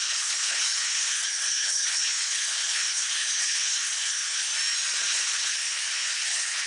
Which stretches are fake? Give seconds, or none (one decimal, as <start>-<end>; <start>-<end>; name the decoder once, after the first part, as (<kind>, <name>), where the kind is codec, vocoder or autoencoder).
0.0-4.5 (codec, HILCodec); 5.0-6.7

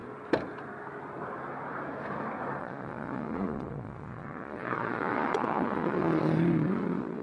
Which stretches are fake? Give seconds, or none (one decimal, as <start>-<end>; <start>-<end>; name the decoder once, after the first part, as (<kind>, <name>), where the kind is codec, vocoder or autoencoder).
2.6-7.2 (vocoder, Vocos)

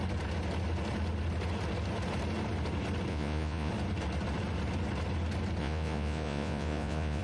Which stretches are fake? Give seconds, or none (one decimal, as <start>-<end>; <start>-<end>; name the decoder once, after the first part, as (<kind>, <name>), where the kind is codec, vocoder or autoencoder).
3.1-3.7 (vocoder, Vocos); 5.6-7.2

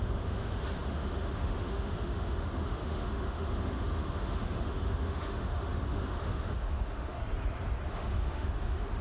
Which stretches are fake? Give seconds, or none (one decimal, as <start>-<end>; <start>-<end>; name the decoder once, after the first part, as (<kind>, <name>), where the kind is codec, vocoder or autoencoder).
0.0-7.2 (autoencoder, DAC-VAE); 7.9-9.0

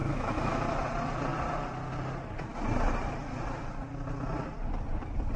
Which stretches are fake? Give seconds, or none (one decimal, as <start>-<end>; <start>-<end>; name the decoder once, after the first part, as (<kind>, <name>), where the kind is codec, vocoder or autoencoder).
0.0-0.6 (autoencoder, DAC-VAE)